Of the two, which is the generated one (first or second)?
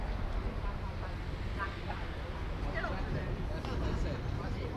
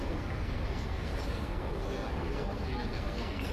second